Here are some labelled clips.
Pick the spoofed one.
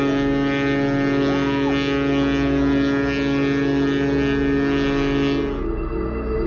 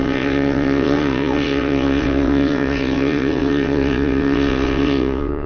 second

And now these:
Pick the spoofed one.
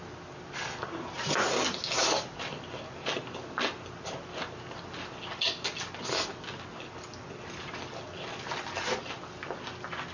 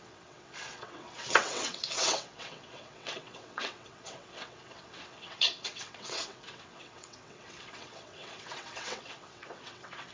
second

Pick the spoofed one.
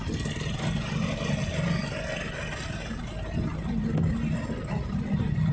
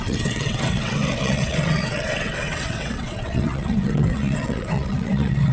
second